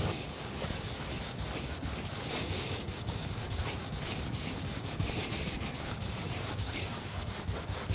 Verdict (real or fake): fake